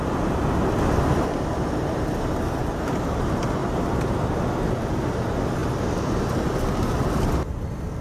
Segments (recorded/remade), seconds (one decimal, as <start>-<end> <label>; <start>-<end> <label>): 0.0-2.6 recorded; 2.6-3.2 remade; 3.2-3.6 recorded; 3.6-4.4 remade; 4.4-5.6 recorded; 5.6-6.2 remade; 6.2-8.0 recorded